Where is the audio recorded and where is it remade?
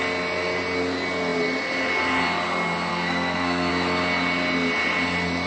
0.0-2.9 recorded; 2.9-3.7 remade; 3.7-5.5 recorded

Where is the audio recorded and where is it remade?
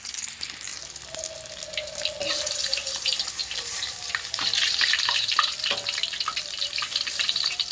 0.0-0.7 remade; 0.7-2.5 recorded; 2.5-5.5 remade; 5.5-6.4 recorded; 6.4-7.7 remade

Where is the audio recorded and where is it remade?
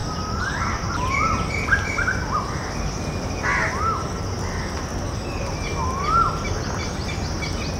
0.0-7.8 recorded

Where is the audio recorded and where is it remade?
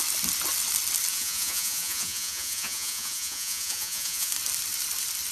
0.0-1.1 recorded; 1.1-4.3 remade; 4.3-5.3 recorded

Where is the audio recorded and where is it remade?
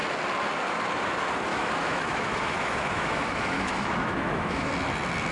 0.0-1.5 recorded; 1.5-4.7 remade; 4.7-5.3 recorded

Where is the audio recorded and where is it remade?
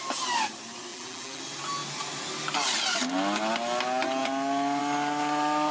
0.0-0.9 recorded; 0.9-1.4 remade; 1.4-5.7 recorded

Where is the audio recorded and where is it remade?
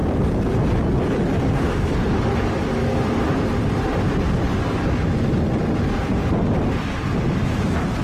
0.0-8.0 recorded